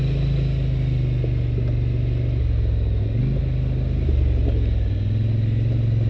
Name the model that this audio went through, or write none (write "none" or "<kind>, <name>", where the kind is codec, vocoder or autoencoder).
none